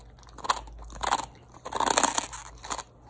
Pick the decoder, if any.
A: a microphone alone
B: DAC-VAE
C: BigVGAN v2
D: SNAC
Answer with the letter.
A